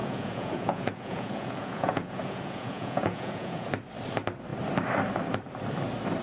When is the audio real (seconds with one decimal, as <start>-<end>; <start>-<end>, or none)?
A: 3.7-6.2